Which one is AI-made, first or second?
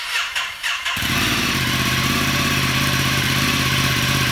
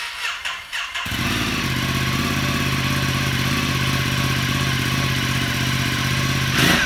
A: first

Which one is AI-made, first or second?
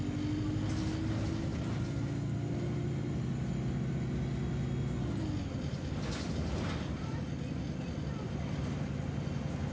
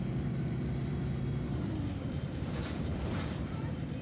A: second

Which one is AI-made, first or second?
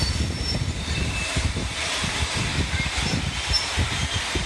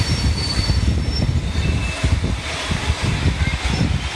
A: first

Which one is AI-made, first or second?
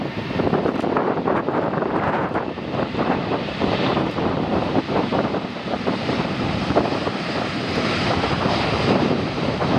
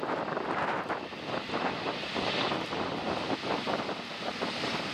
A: first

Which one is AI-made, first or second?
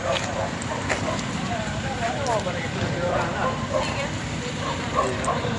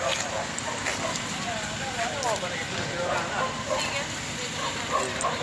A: first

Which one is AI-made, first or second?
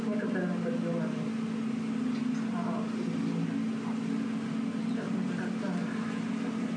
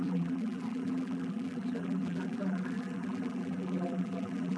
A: second